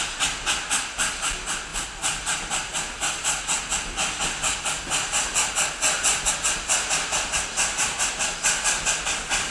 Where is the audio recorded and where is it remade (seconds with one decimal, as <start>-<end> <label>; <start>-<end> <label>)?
0.0-9.5 recorded